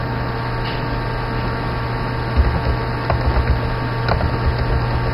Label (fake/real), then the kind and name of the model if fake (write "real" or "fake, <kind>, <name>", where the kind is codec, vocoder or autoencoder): real